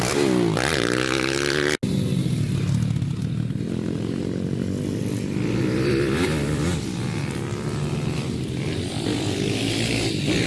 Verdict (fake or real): real